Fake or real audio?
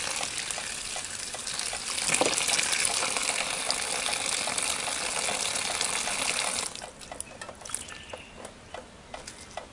real